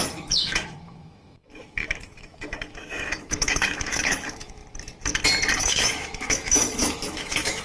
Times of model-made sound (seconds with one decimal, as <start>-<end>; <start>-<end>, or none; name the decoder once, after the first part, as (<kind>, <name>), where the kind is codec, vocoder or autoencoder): 0.0-4.6 (autoencoder, DAC-VAE); 5.6-7.6